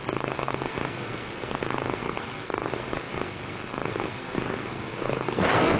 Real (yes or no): no